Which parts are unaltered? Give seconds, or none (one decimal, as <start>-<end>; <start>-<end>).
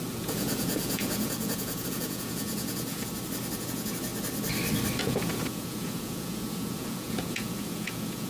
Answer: 3.1-3.6; 4.1-5.0